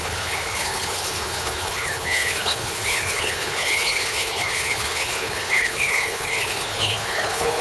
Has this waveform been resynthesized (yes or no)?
yes